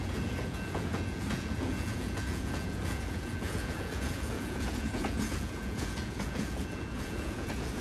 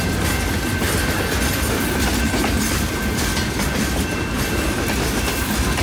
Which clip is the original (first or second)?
second